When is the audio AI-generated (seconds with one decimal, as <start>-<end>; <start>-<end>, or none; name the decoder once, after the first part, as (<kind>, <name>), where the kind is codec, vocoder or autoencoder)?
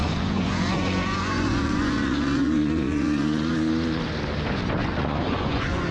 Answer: 0.0-3.5 (vocoder, Vocos); 4.8-5.9